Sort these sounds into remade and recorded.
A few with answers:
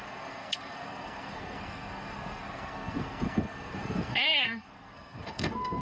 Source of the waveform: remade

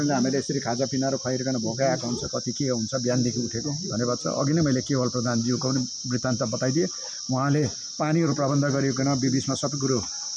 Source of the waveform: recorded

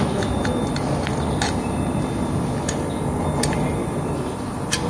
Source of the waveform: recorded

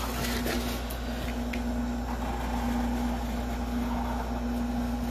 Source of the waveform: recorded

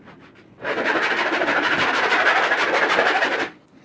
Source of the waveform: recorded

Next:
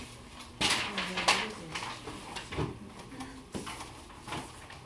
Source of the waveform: recorded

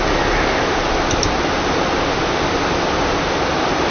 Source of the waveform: recorded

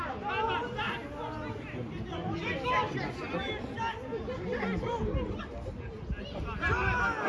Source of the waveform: recorded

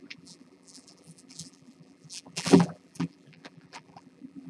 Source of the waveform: remade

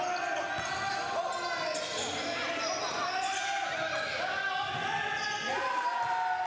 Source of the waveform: recorded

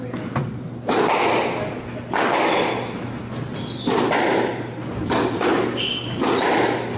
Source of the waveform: recorded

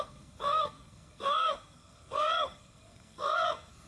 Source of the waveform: remade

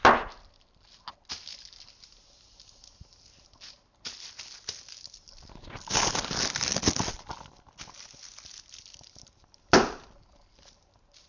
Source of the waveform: recorded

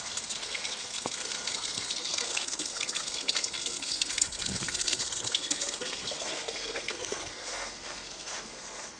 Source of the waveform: remade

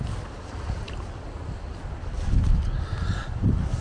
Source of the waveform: recorded